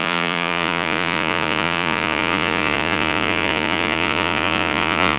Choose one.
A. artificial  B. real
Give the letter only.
A